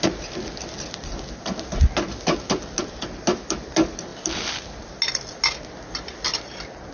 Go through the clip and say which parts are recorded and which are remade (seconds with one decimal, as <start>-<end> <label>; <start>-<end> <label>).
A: 0.0-6.9 recorded